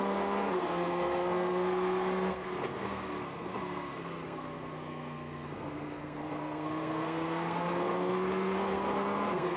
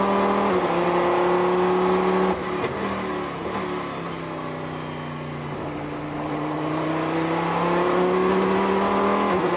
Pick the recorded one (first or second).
second